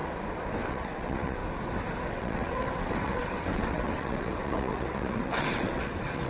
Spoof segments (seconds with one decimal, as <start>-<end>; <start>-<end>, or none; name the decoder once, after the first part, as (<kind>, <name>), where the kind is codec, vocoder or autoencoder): 0.7-1.4 (vocoder, WaveNeXt); 2.1-6.3